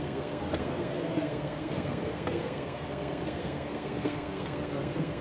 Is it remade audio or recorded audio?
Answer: remade